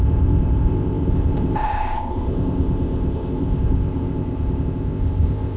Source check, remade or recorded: remade